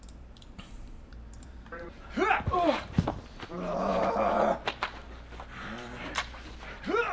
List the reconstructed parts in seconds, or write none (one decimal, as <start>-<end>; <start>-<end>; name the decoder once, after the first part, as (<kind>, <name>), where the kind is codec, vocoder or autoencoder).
0.0-3.9 (vocoder, BigVGAN v2); 6.0-7.1